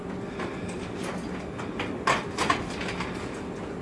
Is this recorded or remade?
recorded